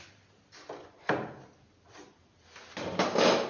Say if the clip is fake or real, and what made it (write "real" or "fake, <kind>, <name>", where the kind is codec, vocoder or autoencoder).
real